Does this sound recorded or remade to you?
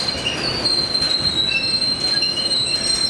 recorded